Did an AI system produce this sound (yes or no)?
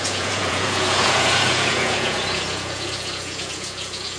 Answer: yes